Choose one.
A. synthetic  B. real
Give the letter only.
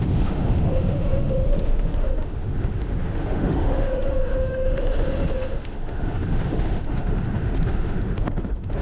A